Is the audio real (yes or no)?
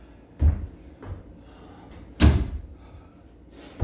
yes